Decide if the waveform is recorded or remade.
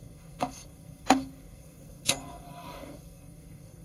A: remade